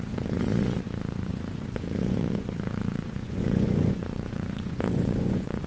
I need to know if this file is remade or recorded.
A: remade